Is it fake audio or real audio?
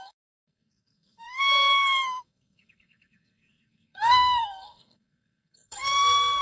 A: fake